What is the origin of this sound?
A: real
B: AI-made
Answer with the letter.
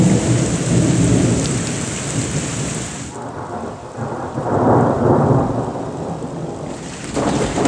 A